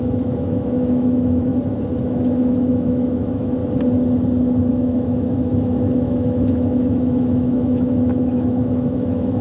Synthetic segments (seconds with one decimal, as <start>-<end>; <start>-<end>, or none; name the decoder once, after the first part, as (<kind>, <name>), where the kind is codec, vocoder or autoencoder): 0.0-1.5 (autoencoder, DAC-VAE); 2.0-3.6; 4.7-9.4